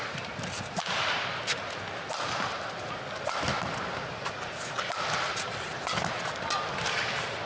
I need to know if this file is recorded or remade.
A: recorded